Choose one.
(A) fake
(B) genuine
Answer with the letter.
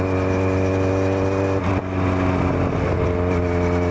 B